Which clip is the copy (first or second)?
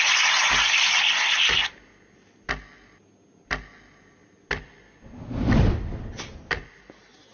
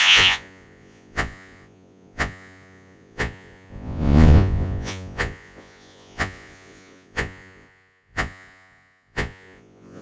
second